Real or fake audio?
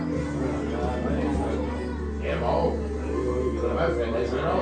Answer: real